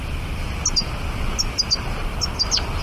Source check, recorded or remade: recorded